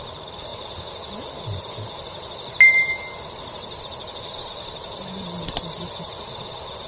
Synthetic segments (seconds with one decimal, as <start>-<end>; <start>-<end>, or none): 0.0-0.5; 3.8-6.9